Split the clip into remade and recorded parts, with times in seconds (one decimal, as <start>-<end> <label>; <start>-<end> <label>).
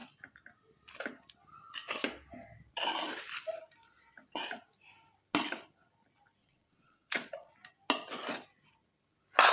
0.0-6.4 recorded; 6.4-7.5 remade; 7.5-9.5 recorded